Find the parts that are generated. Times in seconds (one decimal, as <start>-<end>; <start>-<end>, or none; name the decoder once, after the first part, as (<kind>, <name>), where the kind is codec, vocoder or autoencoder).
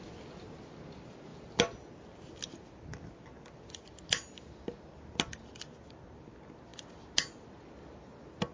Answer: none